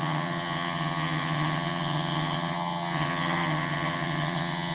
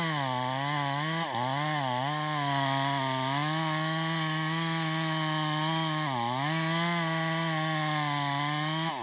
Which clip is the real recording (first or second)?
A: second